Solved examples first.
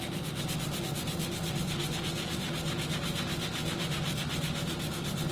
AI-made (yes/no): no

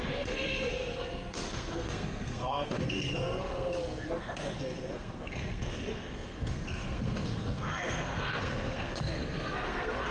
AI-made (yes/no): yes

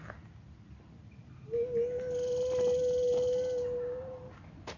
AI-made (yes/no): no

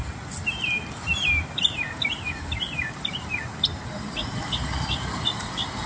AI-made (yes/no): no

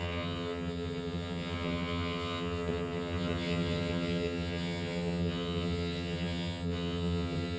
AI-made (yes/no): yes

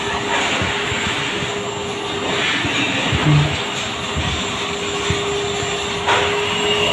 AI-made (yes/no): no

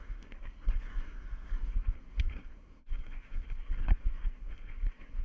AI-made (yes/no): yes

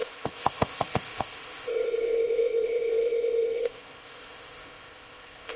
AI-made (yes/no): yes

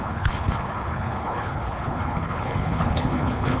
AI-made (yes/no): yes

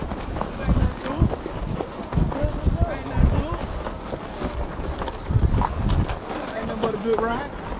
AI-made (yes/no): no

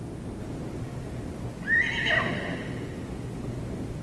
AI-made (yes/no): no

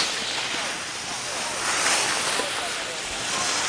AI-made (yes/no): no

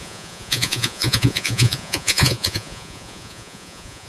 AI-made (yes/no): yes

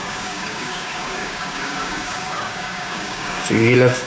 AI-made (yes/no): yes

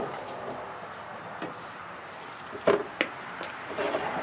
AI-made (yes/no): no